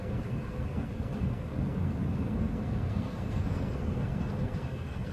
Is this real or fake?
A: fake